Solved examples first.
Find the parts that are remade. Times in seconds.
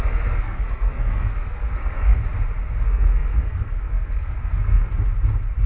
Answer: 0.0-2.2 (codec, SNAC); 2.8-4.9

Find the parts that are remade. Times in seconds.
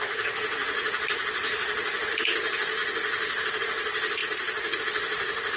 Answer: none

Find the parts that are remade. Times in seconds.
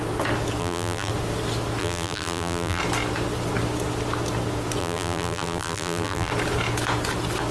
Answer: 0.6-1.1 (vocoder, BigVGAN v2); 1.8-2.8; 4.8-6.3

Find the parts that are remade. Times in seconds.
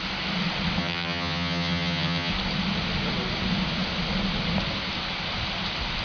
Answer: 0.8-2.3 (vocoder, HiFi-GAN)